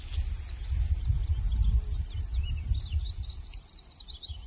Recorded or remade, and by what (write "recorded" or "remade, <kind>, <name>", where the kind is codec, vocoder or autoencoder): recorded